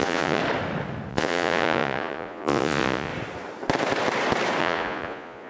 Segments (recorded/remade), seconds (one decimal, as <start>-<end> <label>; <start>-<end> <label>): 0.0-0.4 remade; 0.4-1.1 recorded; 1.1-3.1 remade; 3.1-4.6 recorded; 4.6-5.5 remade